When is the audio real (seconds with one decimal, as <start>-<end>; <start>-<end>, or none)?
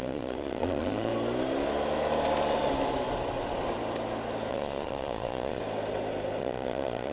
1.1-4.5; 5.6-6.4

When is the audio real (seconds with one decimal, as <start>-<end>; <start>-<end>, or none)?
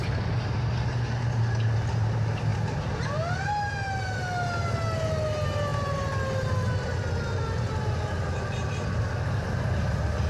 0.0-10.3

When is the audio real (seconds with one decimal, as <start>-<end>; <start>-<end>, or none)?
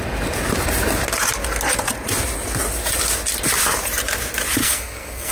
0.0-4.6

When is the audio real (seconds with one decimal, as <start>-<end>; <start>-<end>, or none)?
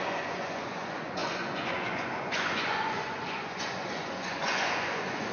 none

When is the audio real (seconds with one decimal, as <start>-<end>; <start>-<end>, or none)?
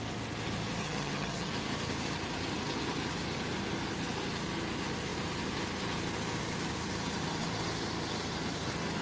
0.0-0.8; 1.5-9.0